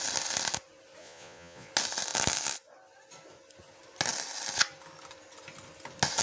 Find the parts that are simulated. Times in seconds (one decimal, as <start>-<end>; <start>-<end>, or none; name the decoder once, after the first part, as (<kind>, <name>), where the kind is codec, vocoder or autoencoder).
1.0-1.7 (vocoder, Vocos)